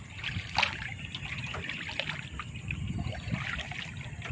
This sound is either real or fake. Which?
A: real